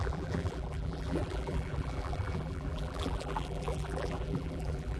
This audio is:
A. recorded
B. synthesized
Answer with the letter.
B